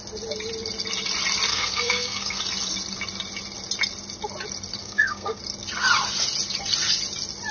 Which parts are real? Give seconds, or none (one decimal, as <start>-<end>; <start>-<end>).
0.0-1.5; 2.4-4.8; 5.4-7.5